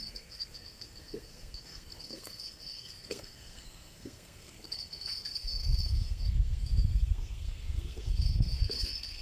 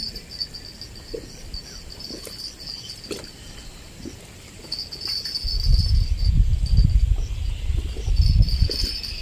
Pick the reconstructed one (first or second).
first